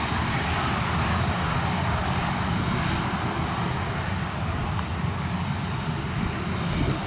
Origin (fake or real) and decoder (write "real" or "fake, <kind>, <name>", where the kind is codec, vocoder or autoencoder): real